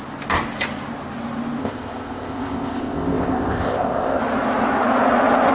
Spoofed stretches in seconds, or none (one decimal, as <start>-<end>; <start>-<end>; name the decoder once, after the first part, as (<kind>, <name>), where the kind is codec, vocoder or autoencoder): 1.6-4.2 (codec, ZipCodec)